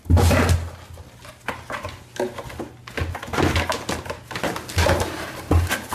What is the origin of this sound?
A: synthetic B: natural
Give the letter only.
B